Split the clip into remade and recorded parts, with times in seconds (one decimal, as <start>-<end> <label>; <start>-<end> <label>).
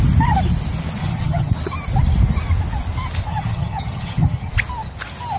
0.0-1.0 recorded; 1.0-1.5 remade; 1.5-3.3 recorded; 3.3-4.5 remade; 4.5-5.4 recorded